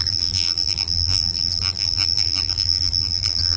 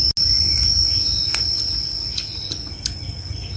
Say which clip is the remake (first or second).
first